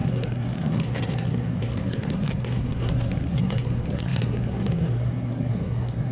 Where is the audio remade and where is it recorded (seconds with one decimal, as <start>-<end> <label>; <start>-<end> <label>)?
0.0-6.1 remade